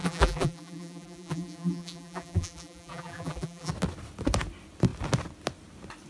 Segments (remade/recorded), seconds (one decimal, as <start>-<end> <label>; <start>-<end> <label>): 0.0-3.7 remade; 3.7-6.1 recorded